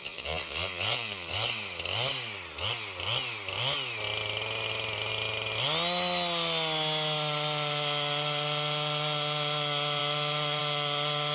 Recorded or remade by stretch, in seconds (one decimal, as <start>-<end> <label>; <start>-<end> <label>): 0.0-1.3 remade; 1.3-11.3 recorded